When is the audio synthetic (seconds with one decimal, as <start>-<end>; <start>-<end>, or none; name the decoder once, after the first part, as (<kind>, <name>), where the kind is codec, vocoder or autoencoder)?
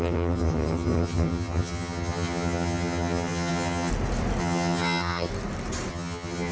0.0-3.9 (vocoder, HiFi-GAN); 4.4-5.3; 5.9-6.5